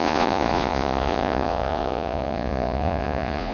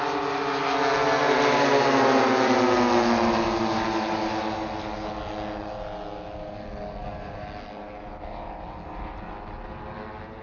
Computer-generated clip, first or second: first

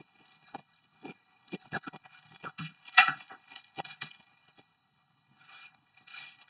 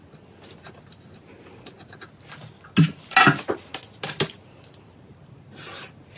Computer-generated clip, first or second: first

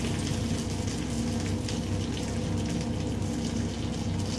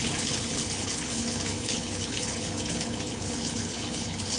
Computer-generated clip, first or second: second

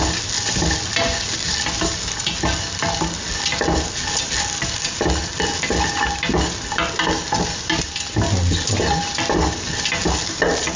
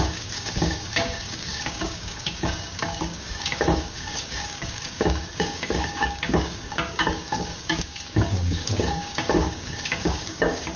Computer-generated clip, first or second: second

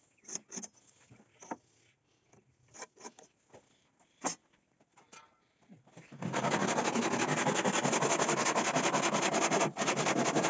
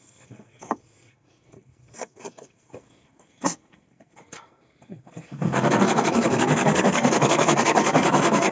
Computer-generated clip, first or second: second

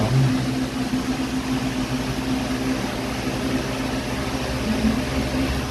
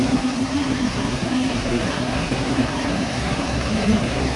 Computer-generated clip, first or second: second